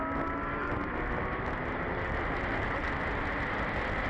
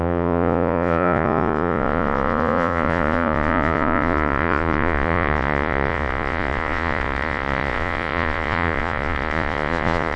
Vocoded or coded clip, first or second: second